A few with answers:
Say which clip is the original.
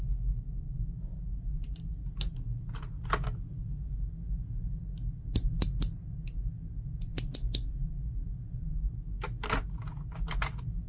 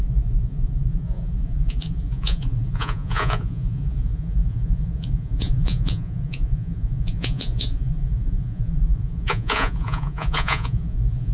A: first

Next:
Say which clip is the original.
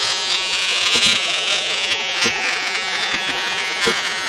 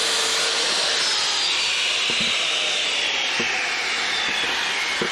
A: second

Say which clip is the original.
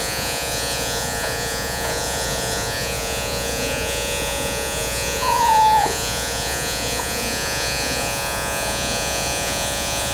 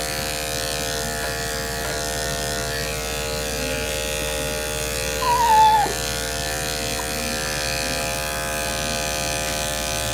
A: second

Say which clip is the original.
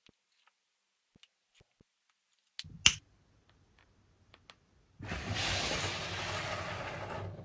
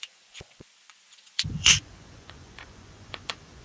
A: first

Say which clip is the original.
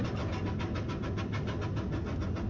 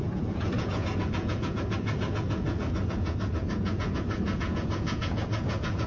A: first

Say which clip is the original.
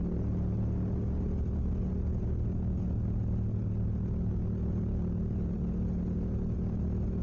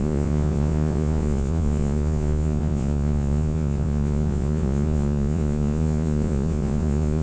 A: first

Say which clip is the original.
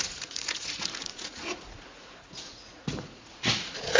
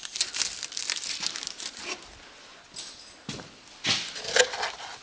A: second